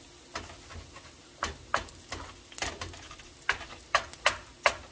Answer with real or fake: real